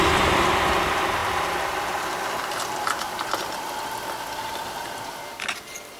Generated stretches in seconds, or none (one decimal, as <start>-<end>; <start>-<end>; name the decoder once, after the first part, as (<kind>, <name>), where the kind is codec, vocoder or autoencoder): 0.0-6.0 (vocoder, BigVGAN v2)